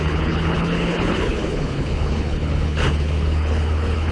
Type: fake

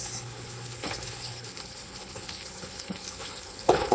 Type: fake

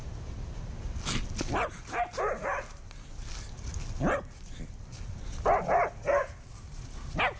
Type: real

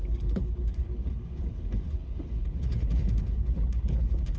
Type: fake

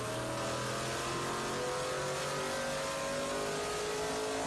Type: real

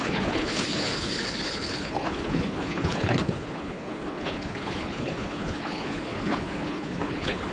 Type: fake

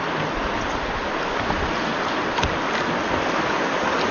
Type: real